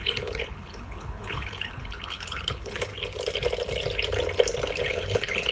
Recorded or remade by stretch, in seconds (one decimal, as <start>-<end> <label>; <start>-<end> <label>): 0.0-2.9 remade; 2.9-4.8 recorded; 4.8-5.5 remade